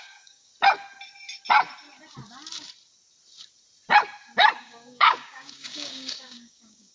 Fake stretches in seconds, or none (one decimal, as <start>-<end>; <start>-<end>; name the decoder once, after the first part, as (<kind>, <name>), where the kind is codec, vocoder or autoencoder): 0.0-0.5 (codec, DAC); 4.6-6.9